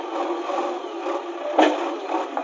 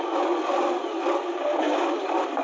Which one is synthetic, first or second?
second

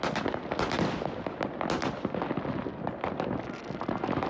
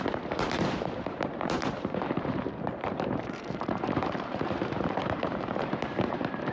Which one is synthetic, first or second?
second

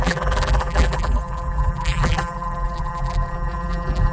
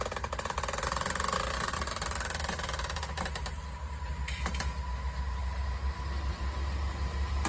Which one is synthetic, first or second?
first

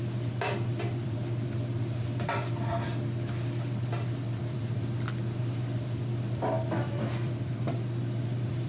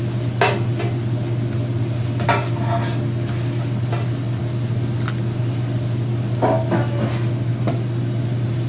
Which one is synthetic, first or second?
first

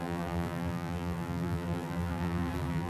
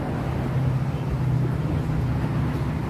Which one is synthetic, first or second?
first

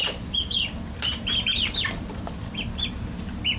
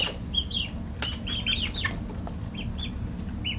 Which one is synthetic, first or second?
first